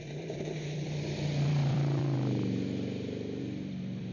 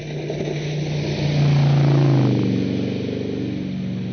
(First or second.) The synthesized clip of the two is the first